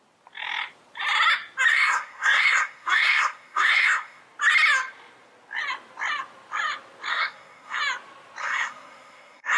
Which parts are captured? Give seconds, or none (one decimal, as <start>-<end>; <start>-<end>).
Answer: 0.0-1.7; 4.2-7.1; 7.8-8.4